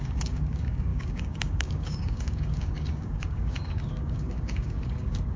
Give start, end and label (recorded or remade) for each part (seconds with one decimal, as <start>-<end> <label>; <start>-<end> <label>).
0.0-5.4 remade